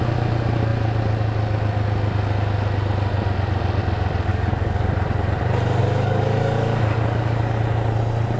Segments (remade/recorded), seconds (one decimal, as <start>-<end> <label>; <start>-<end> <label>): 0.0-4.3 recorded; 4.3-4.9 remade; 4.9-5.8 recorded; 5.8-7.6 remade; 7.6-8.4 recorded